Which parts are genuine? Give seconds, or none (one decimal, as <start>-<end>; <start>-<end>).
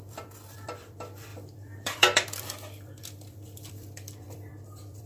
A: none